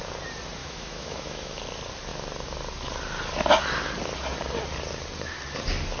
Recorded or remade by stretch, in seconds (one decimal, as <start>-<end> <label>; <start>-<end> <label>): 0.0-0.6 recorded; 0.6-1.6 remade; 1.6-6.0 recorded